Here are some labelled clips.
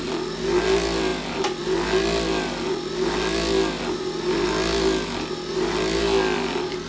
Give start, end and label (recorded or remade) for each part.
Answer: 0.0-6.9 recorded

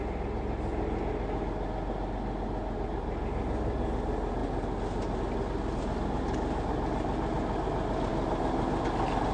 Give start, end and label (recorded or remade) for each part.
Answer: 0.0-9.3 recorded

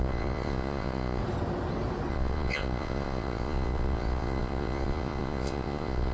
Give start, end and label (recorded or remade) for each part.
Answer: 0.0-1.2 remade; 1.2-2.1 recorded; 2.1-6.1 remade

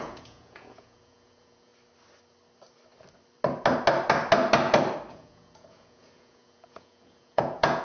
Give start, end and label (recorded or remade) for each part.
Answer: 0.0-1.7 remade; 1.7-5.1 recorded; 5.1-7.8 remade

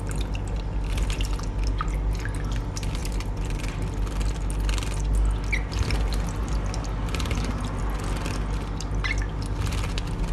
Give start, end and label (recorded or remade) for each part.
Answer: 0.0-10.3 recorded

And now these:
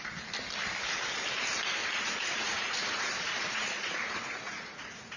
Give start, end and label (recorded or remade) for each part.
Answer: 0.0-1.8 recorded; 1.8-5.2 remade

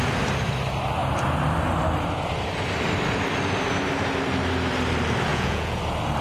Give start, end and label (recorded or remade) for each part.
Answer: 0.0-5.3 recorded; 5.3-5.8 remade; 5.8-6.2 recorded